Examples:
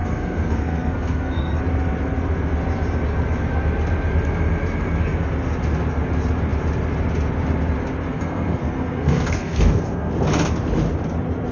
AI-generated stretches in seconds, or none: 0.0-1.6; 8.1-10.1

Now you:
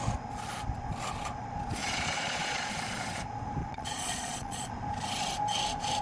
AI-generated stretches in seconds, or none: 1.8-2.7; 3.6-4.7